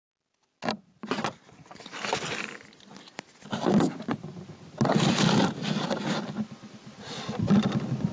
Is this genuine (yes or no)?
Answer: yes